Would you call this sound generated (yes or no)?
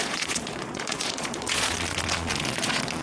yes